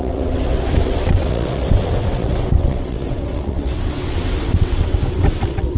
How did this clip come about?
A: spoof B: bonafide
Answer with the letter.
A